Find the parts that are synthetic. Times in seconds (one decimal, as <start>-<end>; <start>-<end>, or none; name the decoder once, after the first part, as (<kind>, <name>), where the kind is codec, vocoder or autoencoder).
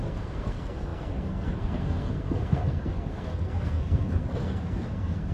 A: 0.0-5.3 (codec, SNAC)